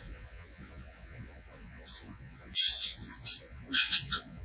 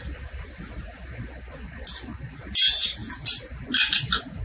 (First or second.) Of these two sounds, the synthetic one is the first